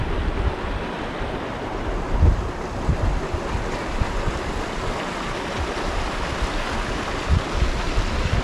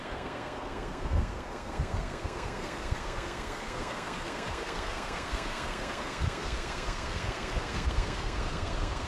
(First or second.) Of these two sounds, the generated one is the second